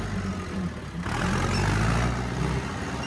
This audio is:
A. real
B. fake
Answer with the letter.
A